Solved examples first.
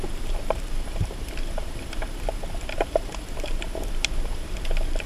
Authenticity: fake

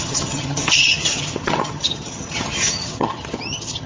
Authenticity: fake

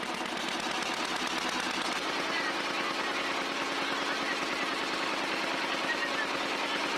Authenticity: real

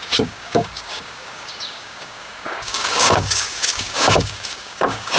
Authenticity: fake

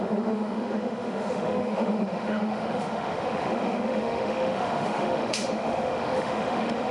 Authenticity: fake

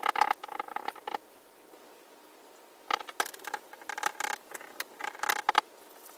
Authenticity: real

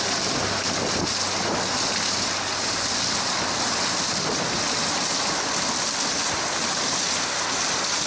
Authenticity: real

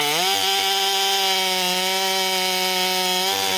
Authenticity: real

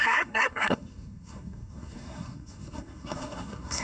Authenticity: fake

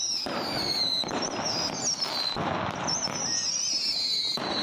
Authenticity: real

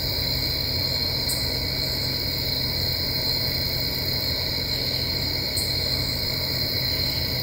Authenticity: real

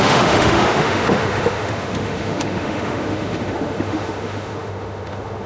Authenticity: fake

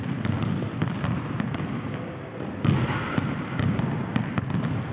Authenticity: real